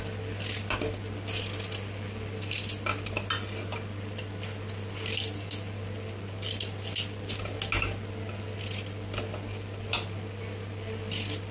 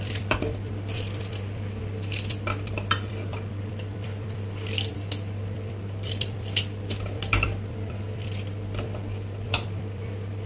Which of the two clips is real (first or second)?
first